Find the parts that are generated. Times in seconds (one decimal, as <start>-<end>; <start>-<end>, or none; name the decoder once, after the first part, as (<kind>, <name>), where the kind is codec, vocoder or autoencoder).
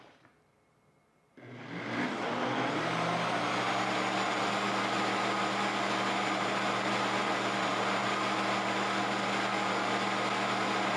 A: none